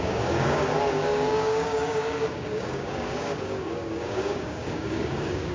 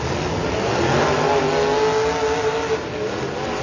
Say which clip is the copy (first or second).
first